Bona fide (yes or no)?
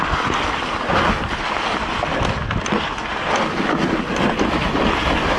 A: yes